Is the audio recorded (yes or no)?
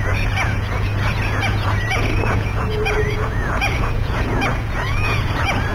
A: no